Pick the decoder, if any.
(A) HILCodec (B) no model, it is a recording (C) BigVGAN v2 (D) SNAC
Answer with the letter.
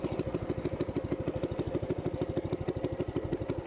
B